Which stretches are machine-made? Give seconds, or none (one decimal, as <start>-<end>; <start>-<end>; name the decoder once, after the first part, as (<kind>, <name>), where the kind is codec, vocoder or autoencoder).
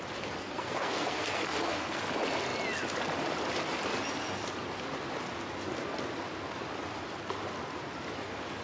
0.4-2.0 (codec, SNAC)